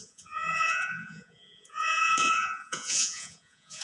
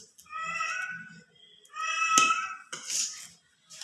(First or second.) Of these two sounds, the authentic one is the second